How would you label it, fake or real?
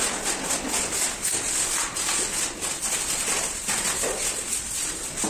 real